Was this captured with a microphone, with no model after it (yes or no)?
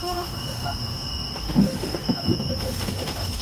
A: no